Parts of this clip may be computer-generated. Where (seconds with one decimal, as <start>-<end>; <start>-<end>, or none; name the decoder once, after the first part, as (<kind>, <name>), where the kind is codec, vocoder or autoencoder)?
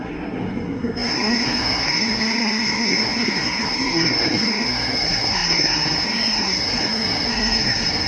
0.0-8.1 (codec, SNAC)